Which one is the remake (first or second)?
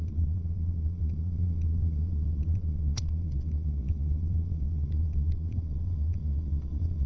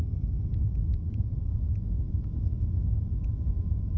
first